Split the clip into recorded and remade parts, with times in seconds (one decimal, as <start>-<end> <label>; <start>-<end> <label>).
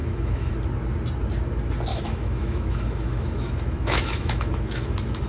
0.0-0.5 remade; 0.5-1.9 recorded; 1.9-5.3 remade